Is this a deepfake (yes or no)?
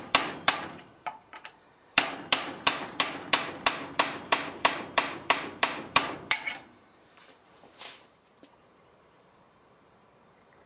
yes